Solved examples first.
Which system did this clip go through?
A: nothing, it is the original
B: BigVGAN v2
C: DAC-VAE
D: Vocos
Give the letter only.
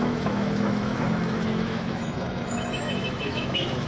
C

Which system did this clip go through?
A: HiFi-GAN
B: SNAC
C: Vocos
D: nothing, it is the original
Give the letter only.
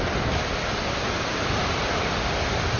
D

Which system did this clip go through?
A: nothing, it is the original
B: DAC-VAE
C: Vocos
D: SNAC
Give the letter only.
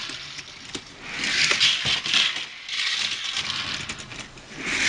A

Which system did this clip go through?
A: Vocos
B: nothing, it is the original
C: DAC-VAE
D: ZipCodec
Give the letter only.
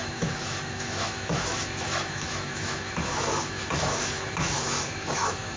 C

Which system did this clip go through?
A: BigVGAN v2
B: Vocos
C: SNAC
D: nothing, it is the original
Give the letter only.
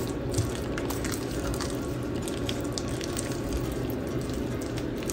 D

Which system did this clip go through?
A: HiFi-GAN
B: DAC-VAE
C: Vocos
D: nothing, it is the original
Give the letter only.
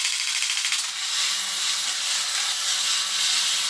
D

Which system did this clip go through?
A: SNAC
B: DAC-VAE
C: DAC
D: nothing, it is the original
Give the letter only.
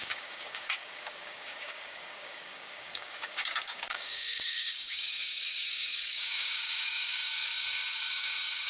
C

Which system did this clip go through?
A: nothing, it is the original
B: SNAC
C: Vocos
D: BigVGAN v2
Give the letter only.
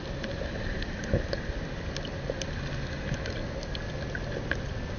A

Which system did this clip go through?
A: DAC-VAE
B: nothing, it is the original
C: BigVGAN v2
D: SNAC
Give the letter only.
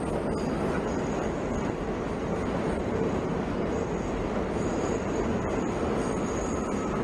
B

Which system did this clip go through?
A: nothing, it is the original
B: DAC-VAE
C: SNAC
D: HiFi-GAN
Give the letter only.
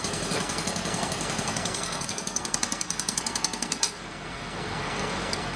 C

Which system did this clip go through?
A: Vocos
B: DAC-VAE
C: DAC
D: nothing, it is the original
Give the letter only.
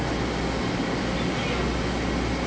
D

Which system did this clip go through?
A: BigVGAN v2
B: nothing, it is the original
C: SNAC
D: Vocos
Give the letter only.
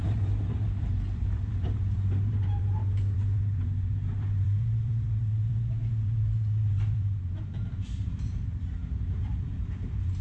A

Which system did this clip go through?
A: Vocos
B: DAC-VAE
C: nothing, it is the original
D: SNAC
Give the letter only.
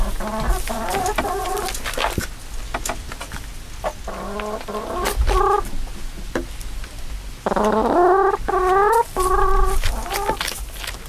C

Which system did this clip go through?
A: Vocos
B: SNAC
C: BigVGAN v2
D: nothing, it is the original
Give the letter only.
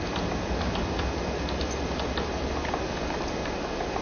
D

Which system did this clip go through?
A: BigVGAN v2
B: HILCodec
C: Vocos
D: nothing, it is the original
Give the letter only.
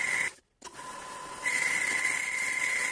D